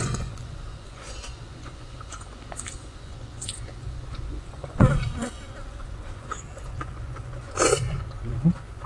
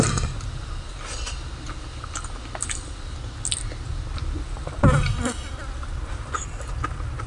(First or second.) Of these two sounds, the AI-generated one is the first